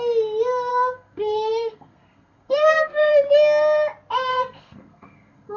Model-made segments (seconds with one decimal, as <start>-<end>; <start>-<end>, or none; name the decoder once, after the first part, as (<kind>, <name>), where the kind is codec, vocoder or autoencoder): 0.7-3.1 (codec, SNAC); 4.3-5.6